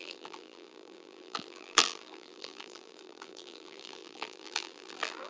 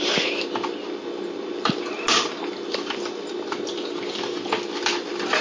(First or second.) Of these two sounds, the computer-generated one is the first